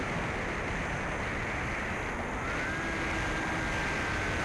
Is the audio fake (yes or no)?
no